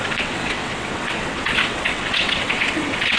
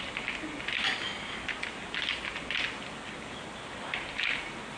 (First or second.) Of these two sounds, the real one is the second